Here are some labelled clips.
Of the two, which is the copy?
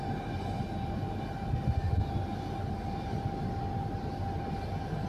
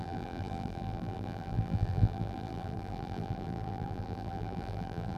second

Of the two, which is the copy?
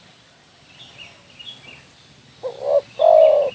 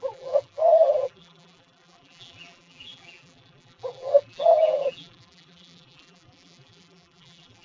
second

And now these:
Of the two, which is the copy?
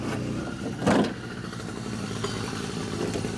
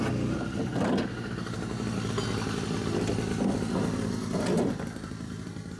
first